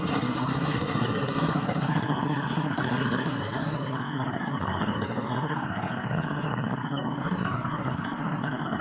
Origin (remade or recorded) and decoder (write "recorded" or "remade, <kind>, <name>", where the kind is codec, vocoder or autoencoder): remade, codec, SNAC